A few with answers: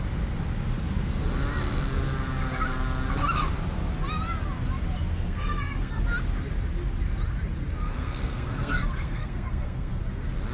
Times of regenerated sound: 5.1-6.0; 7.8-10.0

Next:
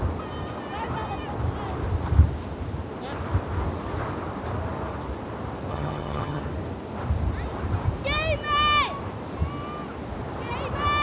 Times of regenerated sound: 5.7-6.4

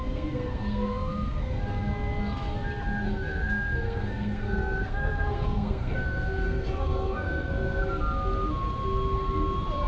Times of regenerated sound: 0.0-1.6; 3.0-7.8